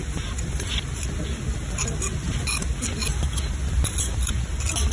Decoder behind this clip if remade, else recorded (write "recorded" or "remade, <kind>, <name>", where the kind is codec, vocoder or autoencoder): recorded